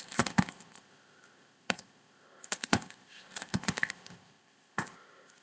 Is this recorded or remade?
remade